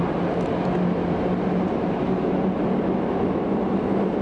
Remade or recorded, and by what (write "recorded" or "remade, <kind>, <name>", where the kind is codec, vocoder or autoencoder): recorded